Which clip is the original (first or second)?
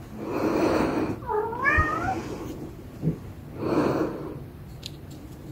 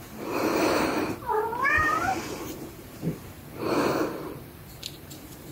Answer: first